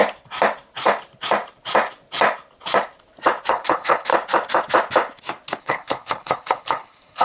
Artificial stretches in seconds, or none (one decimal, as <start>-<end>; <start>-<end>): 3.5-4.1; 5.6-7.2

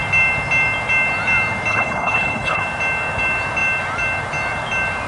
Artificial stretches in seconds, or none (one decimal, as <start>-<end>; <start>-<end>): 1.7-2.6